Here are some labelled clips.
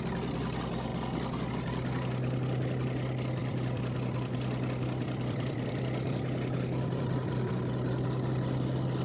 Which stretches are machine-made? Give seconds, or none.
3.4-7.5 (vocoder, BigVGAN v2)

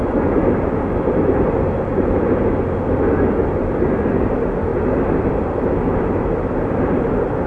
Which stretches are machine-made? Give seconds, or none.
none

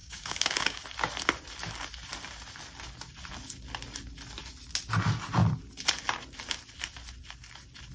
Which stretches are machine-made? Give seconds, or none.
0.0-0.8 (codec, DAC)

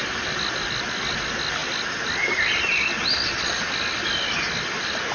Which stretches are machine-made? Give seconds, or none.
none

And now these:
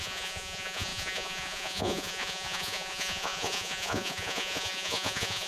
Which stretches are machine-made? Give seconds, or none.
0.0-5.5 (vocoder, Vocos)

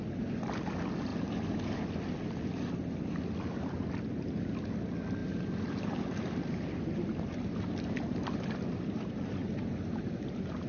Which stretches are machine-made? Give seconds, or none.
1.1-2.7 (vocoder, BigVGAN v2); 5.2-5.8

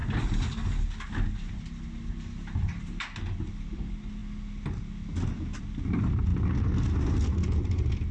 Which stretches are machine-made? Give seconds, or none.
none

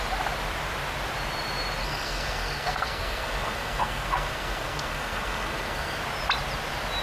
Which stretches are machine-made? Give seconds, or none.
1.8-6.0 (codec, SNAC)